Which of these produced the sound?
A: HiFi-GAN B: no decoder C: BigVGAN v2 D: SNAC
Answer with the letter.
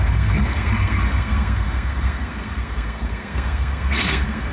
D